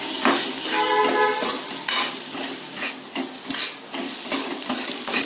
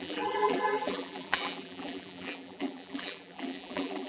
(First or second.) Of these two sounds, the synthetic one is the second